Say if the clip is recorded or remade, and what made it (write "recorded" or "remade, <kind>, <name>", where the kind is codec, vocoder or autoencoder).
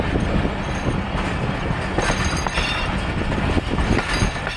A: recorded